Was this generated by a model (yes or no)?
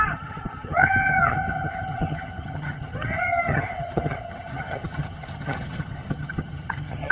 yes